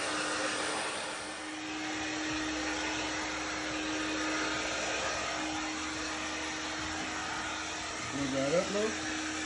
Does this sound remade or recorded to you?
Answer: recorded